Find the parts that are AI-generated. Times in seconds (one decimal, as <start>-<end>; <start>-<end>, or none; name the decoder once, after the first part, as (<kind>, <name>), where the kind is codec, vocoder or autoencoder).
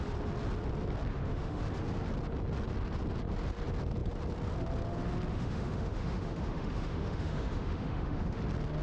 1.1-1.6 (autoencoder, DAC-VAE); 5.3-8.4